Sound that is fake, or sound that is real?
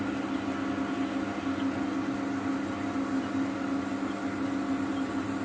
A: real